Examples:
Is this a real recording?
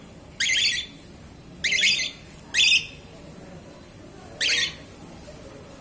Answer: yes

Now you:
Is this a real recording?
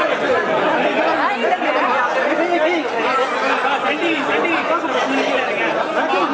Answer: yes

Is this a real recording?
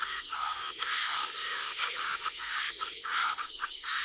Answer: no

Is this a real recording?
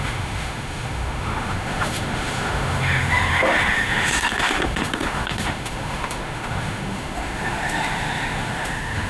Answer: no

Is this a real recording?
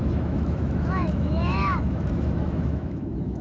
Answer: no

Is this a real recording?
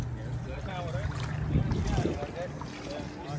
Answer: yes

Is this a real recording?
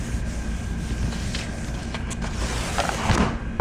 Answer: yes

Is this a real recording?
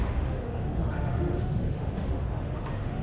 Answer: no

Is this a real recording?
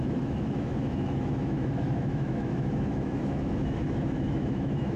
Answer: no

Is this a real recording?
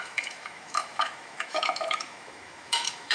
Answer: no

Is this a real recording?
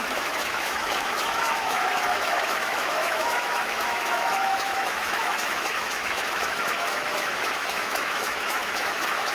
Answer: no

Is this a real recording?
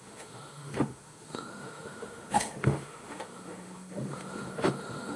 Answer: no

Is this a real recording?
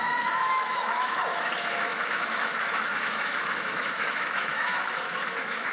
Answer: no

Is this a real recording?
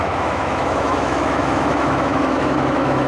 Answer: no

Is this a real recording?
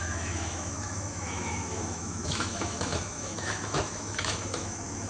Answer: no